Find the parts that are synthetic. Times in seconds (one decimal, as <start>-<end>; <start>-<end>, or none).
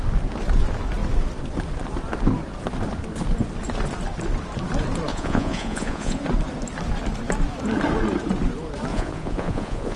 5.1-6.2; 8.9-10.0